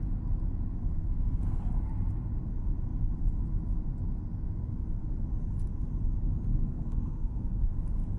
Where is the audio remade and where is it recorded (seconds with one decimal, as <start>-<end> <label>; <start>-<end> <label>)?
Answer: 0.0-0.8 recorded; 0.8-1.6 remade; 1.6-6.5 recorded; 6.5-7.7 remade; 7.7-8.2 recorded